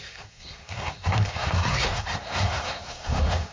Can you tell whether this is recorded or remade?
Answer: remade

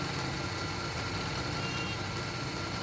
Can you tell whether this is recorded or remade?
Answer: recorded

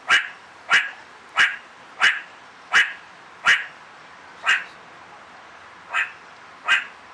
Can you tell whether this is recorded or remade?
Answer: recorded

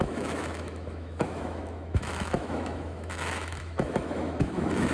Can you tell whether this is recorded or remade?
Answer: remade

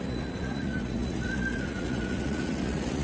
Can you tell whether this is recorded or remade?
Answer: remade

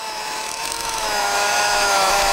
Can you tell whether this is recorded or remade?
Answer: remade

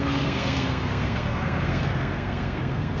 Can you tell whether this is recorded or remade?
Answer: remade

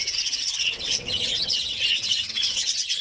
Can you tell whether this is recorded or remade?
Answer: remade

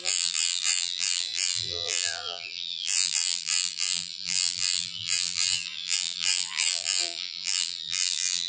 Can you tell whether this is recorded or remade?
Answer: remade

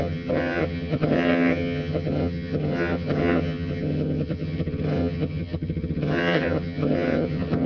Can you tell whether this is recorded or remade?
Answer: remade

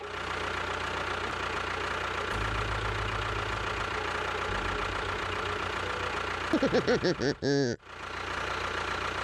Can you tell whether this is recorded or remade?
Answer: recorded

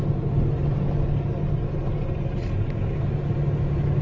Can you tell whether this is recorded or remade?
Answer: recorded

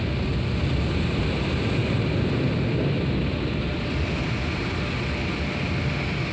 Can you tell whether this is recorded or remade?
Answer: recorded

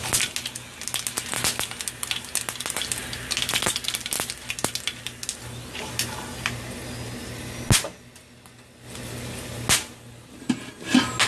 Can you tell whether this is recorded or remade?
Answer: recorded